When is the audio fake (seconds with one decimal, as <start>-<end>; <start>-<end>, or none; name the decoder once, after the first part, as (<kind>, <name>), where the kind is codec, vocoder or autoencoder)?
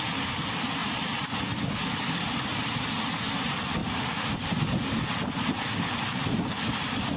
0.8-2.6 (vocoder, BigVGAN v2); 3.8-4.6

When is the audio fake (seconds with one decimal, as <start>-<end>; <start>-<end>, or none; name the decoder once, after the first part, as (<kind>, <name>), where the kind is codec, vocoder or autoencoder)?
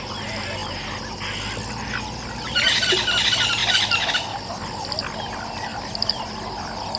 5.7-6.2 (vocoder, BigVGAN v2)